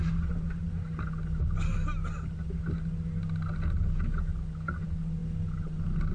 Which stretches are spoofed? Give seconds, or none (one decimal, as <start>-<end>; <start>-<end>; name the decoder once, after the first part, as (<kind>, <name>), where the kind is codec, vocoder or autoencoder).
none